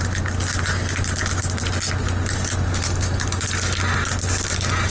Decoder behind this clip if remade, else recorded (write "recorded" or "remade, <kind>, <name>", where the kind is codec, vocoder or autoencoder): recorded